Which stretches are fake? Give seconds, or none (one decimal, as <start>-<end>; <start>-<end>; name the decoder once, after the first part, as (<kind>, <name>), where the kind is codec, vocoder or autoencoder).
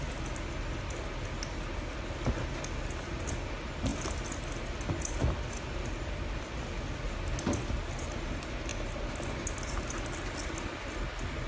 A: none